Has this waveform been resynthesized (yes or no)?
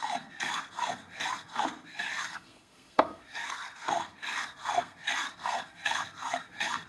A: yes